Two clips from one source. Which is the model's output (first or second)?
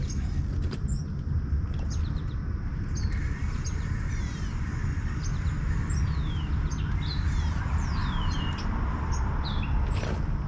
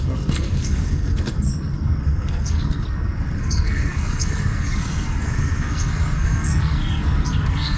second